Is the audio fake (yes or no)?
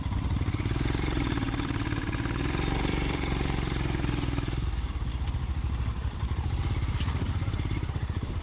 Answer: yes